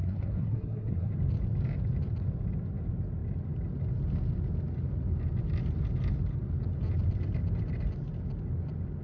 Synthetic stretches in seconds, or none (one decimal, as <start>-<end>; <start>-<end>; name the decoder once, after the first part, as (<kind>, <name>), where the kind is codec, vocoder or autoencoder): 0.0-1.1 (codec, SNAC)